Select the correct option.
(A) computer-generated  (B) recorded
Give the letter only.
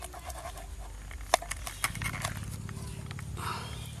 B